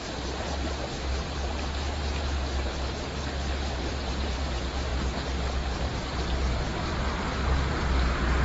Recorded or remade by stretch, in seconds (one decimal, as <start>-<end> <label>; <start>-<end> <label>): 0.0-4.9 remade; 4.9-6.5 recorded; 6.5-8.4 remade